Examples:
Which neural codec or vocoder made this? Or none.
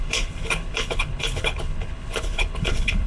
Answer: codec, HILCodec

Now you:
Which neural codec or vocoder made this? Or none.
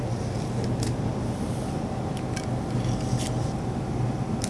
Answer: none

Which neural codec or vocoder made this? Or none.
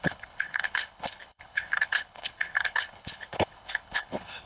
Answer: codec, HILCodec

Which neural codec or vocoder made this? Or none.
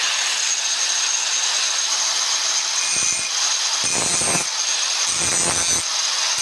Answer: none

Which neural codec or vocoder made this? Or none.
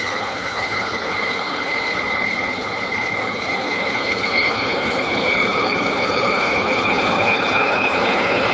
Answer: codec, HILCodec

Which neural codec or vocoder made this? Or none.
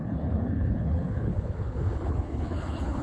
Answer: codec, HILCodec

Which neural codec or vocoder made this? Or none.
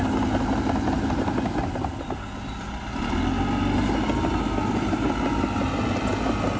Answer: none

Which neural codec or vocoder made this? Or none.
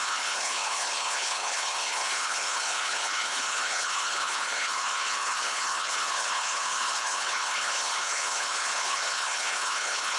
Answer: codec, HILCodec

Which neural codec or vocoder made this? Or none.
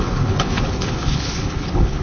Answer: codec, HILCodec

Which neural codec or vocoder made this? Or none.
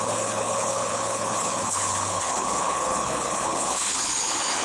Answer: codec, HILCodec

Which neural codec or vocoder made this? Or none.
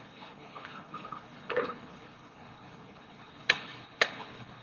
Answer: codec, HILCodec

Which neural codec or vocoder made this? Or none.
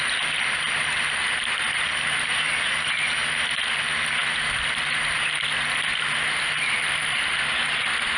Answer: none